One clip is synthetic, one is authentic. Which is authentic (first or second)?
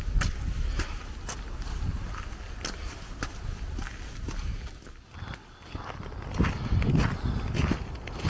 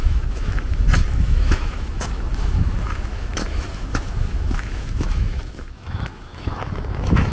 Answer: first